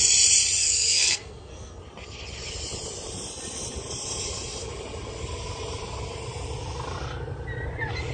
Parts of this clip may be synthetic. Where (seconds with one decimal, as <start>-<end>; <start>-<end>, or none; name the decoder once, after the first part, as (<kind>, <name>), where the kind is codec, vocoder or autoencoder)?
0.6-1.8 (codec, SNAC)

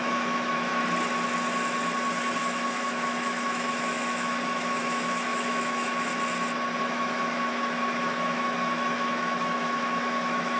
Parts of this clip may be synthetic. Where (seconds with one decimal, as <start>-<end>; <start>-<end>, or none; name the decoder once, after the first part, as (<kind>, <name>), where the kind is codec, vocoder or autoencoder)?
0.0-0.7 (autoencoder, DAC-VAE); 2.4-6.1; 6.8-10.6

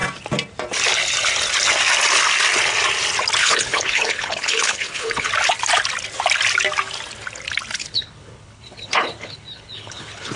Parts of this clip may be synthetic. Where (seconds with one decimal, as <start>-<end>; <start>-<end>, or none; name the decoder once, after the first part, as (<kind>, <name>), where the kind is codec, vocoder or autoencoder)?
3.4-5.3 (codec, HILCodec); 7.8-10.4

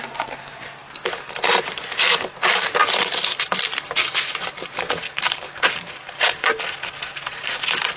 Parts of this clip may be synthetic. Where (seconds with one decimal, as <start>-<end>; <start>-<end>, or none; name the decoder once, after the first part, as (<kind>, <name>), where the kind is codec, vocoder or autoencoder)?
2.8-6.1 (vocoder, BigVGAN v2)

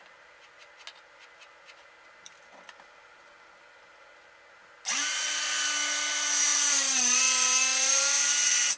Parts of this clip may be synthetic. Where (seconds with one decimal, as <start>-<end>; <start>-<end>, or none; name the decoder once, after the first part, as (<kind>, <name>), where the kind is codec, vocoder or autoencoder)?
none

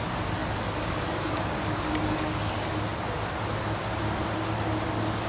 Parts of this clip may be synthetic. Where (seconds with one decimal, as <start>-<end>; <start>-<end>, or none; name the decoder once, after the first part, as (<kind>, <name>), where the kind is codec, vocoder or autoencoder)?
0.4-2.5 (codec, DAC)